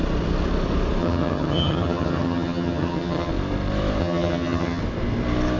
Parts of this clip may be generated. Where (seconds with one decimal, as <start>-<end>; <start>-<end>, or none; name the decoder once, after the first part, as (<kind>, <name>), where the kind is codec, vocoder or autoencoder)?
1.0-3.3 (vocoder, HiFi-GAN); 4.0-4.8